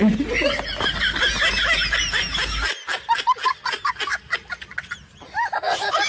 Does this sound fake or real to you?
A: real